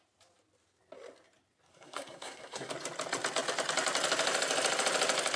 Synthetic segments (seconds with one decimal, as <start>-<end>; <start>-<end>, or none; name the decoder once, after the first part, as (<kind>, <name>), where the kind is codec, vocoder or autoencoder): 1.7-2.7 (codec, SNAC)